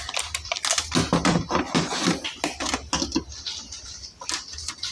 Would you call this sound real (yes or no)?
yes